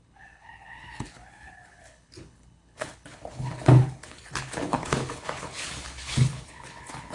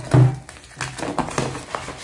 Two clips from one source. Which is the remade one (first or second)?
first